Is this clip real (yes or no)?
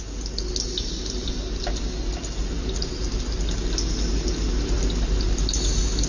yes